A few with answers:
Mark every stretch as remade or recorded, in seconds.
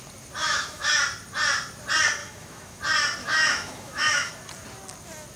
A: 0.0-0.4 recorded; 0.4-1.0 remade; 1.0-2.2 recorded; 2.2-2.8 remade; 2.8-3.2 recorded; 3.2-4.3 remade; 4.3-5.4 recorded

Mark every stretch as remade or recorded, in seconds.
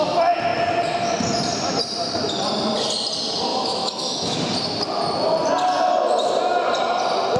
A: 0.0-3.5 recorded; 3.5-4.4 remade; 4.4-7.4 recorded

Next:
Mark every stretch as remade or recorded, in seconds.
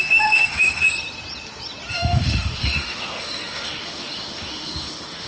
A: 0.0-0.9 remade; 0.9-1.9 recorded; 1.9-5.3 remade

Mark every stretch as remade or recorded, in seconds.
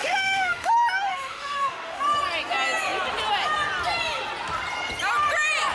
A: 0.0-0.7 remade; 0.7-1.1 recorded; 1.1-2.0 remade; 2.0-5.7 recorded